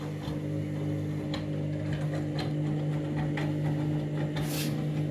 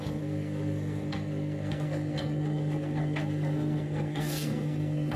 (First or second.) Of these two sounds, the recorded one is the first